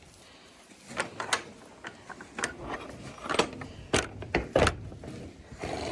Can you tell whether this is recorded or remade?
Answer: recorded